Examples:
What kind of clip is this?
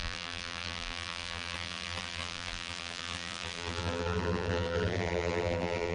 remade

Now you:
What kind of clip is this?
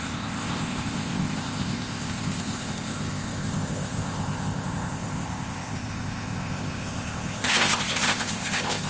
remade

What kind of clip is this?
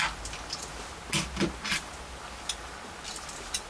recorded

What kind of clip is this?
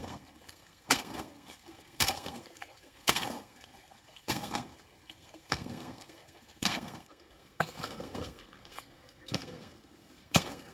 remade